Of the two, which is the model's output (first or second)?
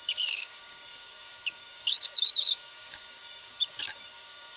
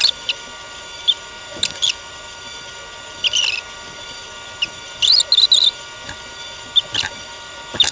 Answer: first